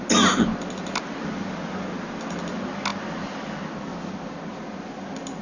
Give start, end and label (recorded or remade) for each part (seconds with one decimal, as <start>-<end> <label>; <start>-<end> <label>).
0.0-5.4 recorded